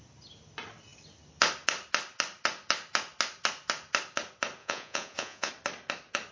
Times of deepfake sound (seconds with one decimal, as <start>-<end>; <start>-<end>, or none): 4.6-5.5